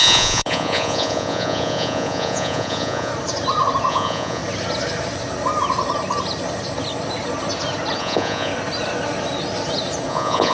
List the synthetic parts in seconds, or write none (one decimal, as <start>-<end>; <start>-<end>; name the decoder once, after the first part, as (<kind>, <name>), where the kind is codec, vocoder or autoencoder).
0.0-3.1 (vocoder, Vocos); 3.9-4.4; 8.0-8.5; 10.1-10.5